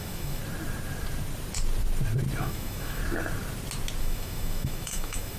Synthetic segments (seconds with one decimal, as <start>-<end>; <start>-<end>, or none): 0.0-0.4; 2.4-3.0; 4.0-5.4